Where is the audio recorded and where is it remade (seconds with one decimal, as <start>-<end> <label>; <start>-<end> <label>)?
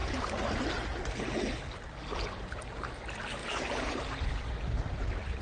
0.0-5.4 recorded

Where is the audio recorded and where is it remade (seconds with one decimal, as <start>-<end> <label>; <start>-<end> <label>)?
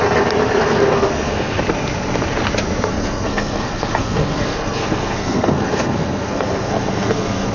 0.0-0.6 recorded; 0.6-1.6 remade; 1.6-2.9 recorded; 2.9-7.5 remade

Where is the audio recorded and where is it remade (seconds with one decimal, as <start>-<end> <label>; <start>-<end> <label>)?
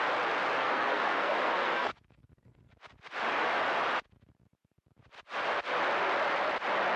0.0-0.6 recorded; 0.6-2.7 remade; 2.7-7.0 recorded